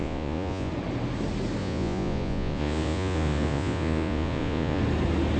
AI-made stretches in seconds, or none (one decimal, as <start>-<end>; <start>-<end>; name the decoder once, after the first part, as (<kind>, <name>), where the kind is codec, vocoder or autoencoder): 0.0-0.7 (vocoder, Vocos); 1.6-4.8